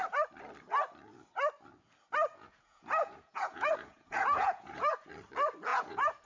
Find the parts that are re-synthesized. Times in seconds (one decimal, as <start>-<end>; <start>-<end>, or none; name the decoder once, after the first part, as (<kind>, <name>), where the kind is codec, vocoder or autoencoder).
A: 2.3-5.1 (vocoder, Vocos); 5.7-6.3

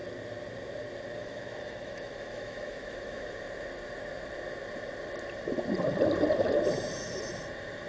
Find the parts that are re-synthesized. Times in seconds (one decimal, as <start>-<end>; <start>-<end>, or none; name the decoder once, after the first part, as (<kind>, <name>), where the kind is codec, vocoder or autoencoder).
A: 1.2-3.4 (autoencoder, DAC-VAE)